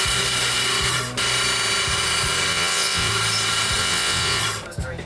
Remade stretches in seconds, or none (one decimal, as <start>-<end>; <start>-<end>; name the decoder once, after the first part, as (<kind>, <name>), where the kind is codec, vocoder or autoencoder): 2.5-3.1 (vocoder, WaveNeXt); 3.8-4.4